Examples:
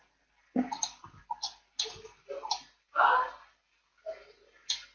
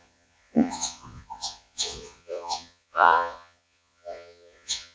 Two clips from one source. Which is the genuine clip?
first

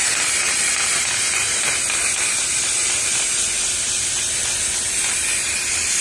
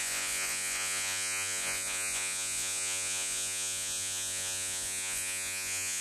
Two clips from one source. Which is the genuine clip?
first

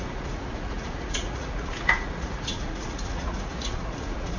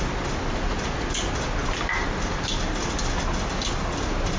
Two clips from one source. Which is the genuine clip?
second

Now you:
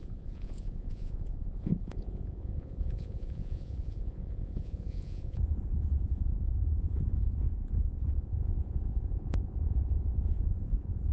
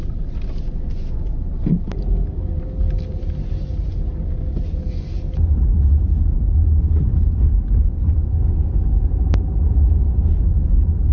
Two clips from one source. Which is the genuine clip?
second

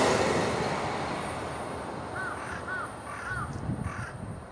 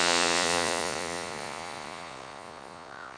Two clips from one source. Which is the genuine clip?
first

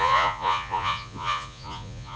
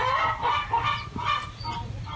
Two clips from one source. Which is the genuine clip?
second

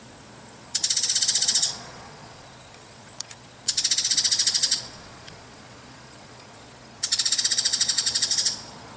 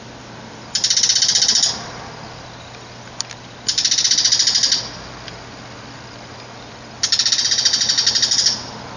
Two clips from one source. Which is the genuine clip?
second